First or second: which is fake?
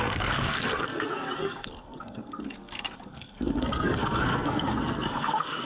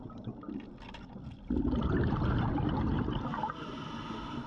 first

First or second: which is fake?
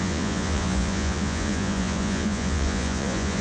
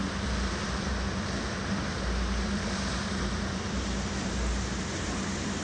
first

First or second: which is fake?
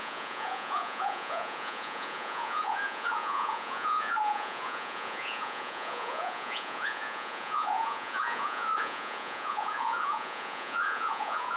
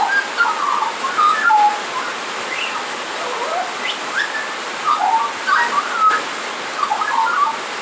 first